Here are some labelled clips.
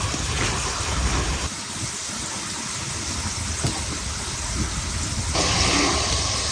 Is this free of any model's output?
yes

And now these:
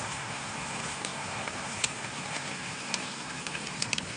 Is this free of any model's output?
no